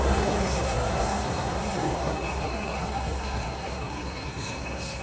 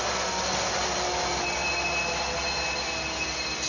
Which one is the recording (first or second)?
second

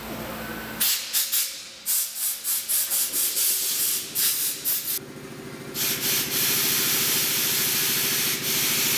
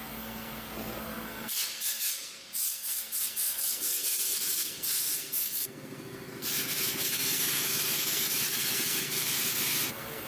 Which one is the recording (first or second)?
first